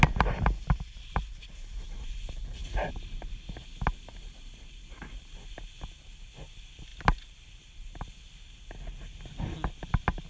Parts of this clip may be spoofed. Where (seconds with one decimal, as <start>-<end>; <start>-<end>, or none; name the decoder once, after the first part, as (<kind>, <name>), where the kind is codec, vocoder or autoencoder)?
none